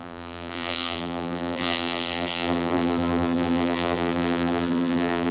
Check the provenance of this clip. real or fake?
fake